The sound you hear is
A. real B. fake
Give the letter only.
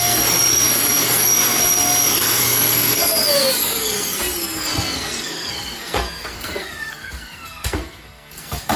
B